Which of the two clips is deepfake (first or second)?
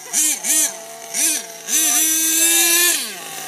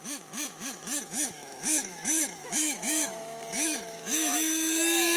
second